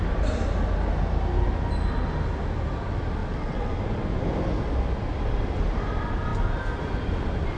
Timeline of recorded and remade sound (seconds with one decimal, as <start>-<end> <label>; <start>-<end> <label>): 0.0-3.2 recorded; 3.2-3.7 remade; 3.7-7.6 recorded